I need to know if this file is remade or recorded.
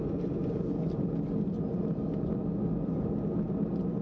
recorded